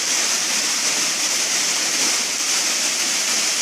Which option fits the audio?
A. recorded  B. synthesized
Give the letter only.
A